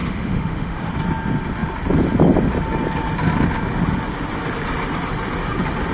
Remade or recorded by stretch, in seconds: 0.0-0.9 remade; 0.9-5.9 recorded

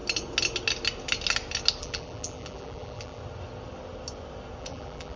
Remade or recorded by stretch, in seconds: 0.0-1.8 recorded; 1.8-3.2 remade; 3.2-4.6 recorded; 4.6-5.2 remade

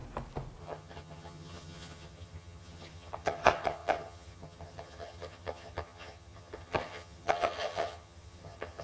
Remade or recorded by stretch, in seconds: 0.0-0.6 recorded; 0.6-8.8 remade

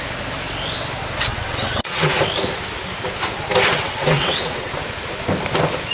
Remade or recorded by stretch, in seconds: 0.0-1.3 recorded; 1.3-2.2 remade; 2.2-3.7 recorded; 3.7-4.7 remade; 4.7-5.9 recorded

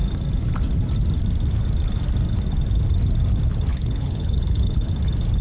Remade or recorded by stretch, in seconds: 0.0-3.7 recorded; 3.7-4.9 remade; 4.9-5.4 recorded

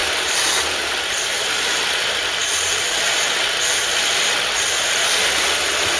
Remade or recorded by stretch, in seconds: 0.0-6.0 recorded